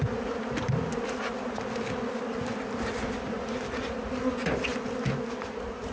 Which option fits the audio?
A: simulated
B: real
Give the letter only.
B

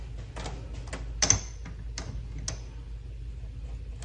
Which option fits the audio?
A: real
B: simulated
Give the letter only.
A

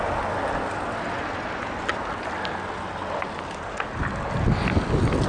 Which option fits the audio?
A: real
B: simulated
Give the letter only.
A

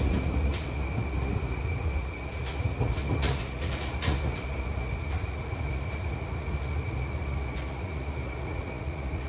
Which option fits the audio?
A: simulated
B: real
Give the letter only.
A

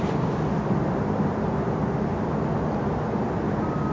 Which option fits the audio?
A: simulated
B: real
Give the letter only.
B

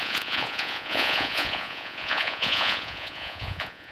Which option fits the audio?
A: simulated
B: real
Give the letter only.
A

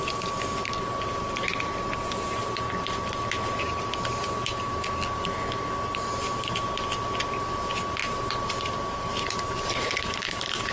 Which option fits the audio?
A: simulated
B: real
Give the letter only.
B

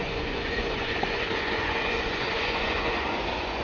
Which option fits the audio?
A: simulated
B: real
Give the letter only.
A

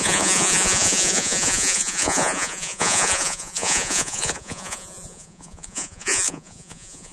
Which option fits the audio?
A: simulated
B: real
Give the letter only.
A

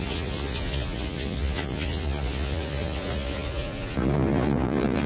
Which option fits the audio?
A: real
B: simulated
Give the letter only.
B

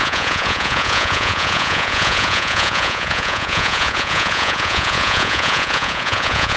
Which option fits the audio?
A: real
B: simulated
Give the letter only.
B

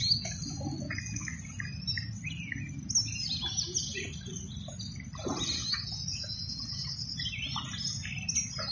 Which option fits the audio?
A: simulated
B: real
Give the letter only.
B